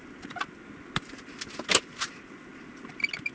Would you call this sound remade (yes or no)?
no